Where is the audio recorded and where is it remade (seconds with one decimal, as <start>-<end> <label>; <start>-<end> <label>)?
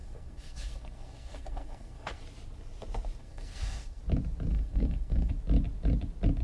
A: 0.0-2.2 remade; 2.2-3.2 recorded; 3.2-4.0 remade; 4.0-4.5 recorded; 4.5-5.3 remade; 5.3-6.4 recorded